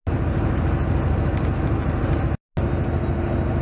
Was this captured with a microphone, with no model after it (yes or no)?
yes